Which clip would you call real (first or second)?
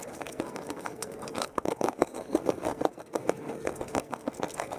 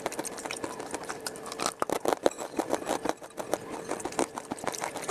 second